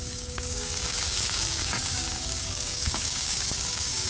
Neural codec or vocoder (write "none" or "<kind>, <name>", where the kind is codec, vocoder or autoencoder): codec, DAC